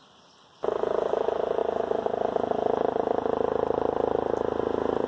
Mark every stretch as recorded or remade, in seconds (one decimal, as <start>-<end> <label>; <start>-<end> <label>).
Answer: 0.0-5.1 recorded